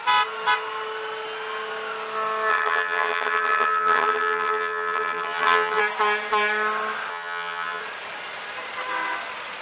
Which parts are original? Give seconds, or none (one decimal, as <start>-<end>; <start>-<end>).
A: 0.0-2.5; 5.8-7.1; 7.8-9.6